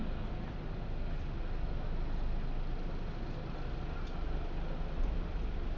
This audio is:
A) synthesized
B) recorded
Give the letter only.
B